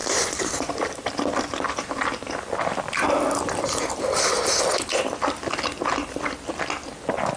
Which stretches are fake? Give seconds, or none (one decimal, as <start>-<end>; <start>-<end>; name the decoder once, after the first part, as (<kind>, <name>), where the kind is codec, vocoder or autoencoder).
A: 0.0-1.1 (vocoder, BigVGAN v2)